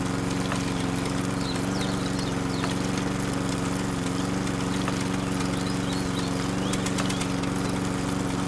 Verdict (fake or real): real